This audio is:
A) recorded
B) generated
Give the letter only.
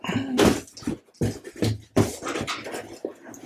A